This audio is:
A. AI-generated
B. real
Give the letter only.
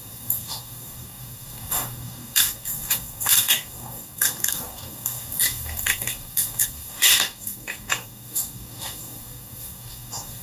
A